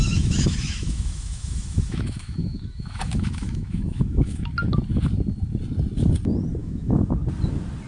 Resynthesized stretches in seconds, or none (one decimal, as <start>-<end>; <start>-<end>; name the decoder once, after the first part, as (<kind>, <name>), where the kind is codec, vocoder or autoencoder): 0.0-4.5 (autoencoder, DAC-VAE); 6.6-7.1